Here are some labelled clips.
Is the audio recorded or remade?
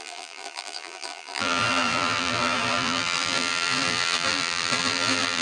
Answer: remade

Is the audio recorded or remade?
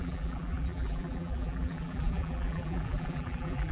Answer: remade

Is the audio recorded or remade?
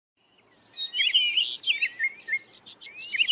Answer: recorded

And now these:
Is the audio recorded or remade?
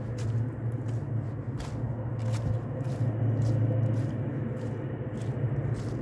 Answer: recorded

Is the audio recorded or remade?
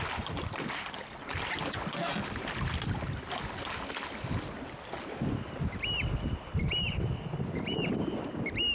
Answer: recorded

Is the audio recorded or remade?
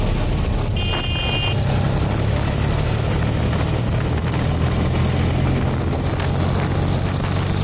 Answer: recorded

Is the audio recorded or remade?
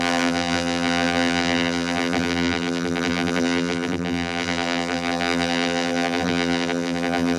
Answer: remade